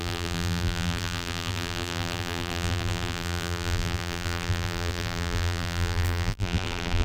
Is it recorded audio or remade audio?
remade